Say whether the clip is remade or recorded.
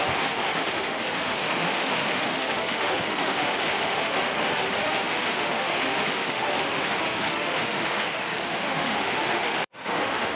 remade